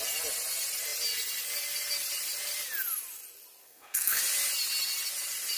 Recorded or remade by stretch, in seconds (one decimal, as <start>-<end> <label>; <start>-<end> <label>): 0.0-3.6 recorded; 3.6-4.2 remade; 4.2-5.6 recorded